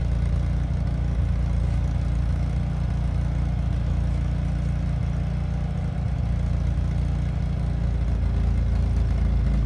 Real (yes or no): yes